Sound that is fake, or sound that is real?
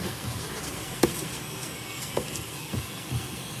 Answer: fake